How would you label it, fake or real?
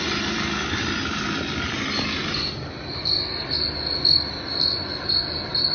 real